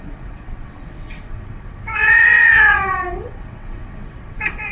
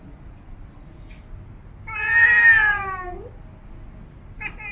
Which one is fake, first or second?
first